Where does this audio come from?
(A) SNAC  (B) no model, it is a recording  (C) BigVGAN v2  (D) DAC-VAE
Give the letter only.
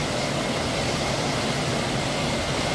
B